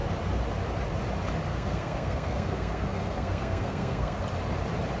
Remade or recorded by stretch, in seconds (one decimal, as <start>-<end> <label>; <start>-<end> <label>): 0.0-1.5 recorded; 1.5-4.2 remade; 4.2-5.0 recorded